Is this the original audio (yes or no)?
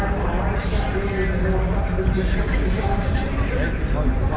yes